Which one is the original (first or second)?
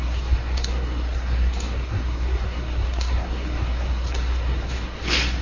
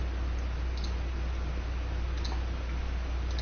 second